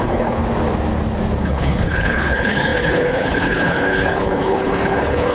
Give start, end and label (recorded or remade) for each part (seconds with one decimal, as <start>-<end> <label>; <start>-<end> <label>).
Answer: 0.0-0.4 remade; 0.4-1.4 recorded; 1.4-5.3 remade